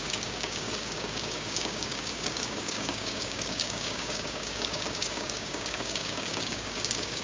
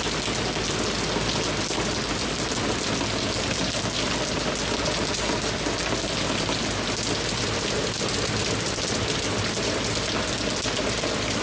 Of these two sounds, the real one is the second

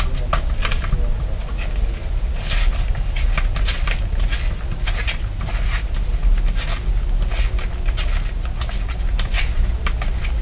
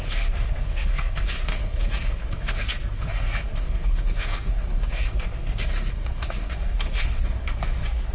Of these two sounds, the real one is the first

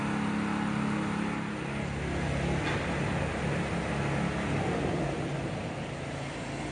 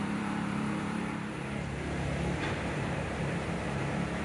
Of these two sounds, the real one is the first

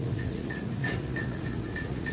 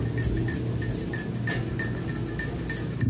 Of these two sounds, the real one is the second